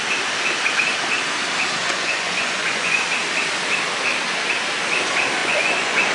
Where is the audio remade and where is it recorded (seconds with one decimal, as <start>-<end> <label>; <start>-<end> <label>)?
0.0-1.8 recorded; 1.8-3.0 remade; 3.0-5.4 recorded; 5.4-6.1 remade